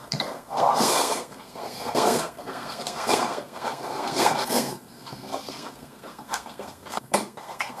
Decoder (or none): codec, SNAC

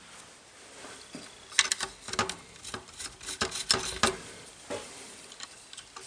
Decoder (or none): none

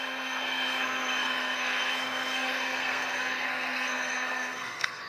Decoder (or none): codec, SNAC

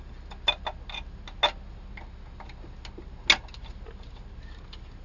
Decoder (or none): none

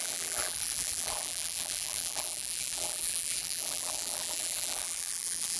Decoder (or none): vocoder, BigVGAN v2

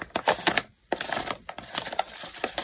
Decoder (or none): none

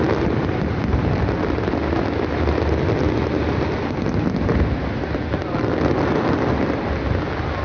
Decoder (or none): none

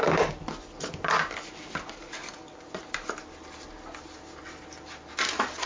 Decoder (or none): none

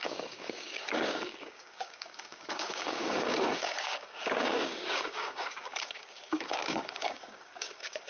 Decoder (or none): codec, DAC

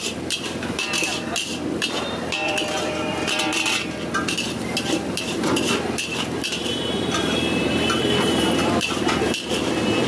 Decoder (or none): vocoder, BigVGAN v2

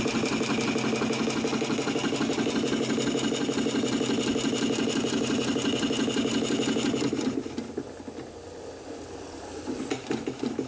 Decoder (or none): none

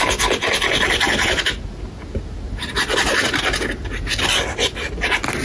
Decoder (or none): none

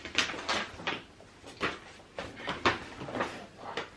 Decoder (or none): none